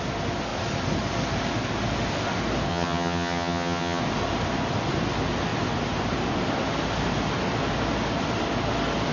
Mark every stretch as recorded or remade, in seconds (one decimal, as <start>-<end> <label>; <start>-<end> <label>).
0.0-2.7 recorded; 2.7-4.0 remade; 4.0-9.1 recorded